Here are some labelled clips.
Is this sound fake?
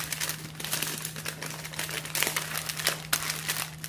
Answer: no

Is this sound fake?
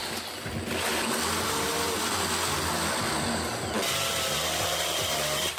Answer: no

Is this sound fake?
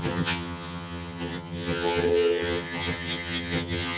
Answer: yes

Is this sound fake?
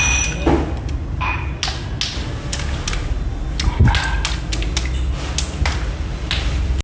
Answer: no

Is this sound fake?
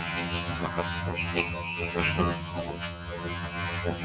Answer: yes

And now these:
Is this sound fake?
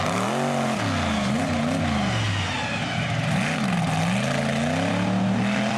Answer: no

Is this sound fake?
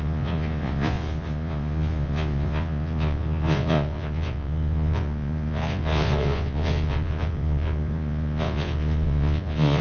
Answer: yes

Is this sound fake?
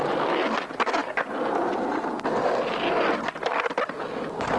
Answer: no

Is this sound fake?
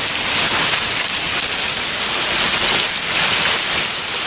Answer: no